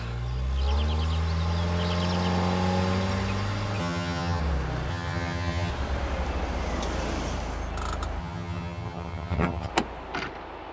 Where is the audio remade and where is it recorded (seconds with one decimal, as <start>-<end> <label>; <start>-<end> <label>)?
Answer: 0.0-3.8 recorded; 3.8-4.4 remade; 4.4-4.9 recorded; 4.9-5.7 remade; 5.7-8.2 recorded; 8.2-9.7 remade; 9.7-10.7 recorded